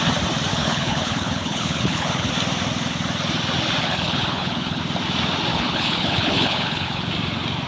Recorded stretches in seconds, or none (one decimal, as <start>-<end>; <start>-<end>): 0.0-0.5; 2.3-3.8; 4.8-5.5; 7.1-7.7